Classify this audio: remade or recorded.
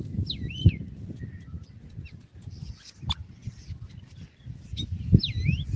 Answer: recorded